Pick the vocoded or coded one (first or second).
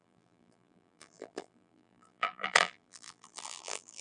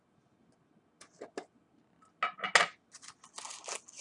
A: first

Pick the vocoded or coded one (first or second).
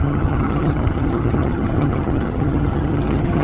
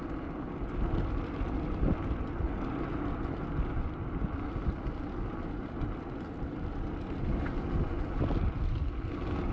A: first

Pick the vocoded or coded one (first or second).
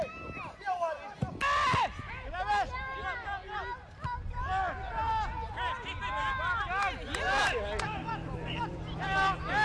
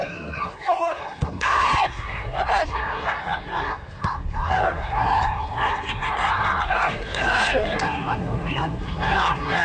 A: second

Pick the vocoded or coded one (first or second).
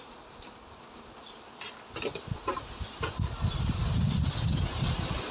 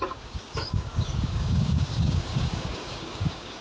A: second